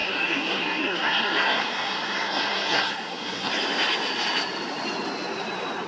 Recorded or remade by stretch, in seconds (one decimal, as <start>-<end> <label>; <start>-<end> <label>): 0.0-3.5 remade; 3.5-5.9 recorded